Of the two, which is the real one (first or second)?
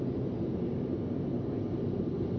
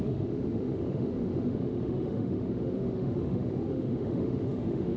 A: first